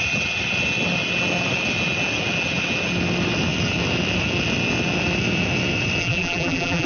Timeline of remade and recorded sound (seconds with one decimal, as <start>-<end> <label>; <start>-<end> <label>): 0.0-6.0 recorded; 6.0-6.9 remade